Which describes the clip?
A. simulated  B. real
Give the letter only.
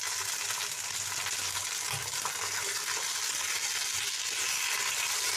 B